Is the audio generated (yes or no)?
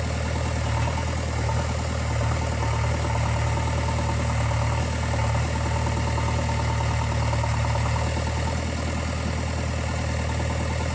no